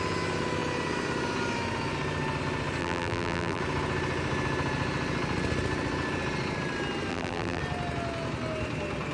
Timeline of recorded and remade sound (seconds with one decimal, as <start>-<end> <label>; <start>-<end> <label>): 0.0-2.8 recorded; 2.8-3.6 remade; 3.6-7.1 recorded; 7.1-7.6 remade; 7.6-9.1 recorded